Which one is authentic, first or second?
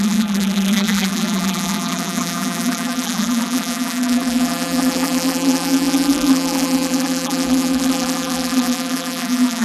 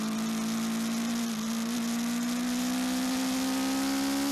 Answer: second